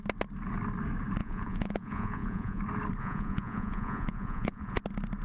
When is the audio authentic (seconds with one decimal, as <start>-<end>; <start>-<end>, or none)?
0.0-1.2; 2.6-3.0; 4.8-5.2